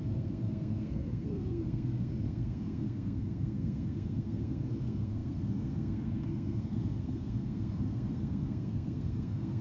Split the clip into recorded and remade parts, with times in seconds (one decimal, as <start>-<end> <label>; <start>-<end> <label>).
0.0-9.6 remade